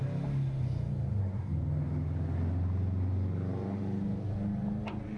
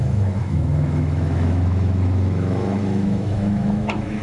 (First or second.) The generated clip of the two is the second